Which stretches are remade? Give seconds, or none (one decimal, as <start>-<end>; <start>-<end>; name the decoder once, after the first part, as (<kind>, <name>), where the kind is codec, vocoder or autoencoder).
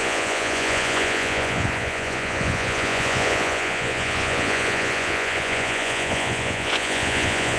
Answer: 0.0-7.6 (vocoder, Vocos)